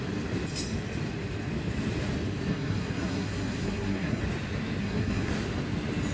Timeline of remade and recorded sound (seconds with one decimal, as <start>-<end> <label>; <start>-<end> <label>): 0.0-2.5 recorded; 2.5-4.2 remade; 4.2-4.8 recorded; 4.8-5.3 remade; 5.3-6.1 recorded